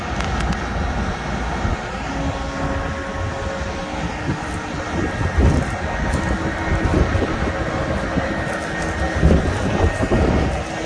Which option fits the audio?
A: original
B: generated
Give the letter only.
A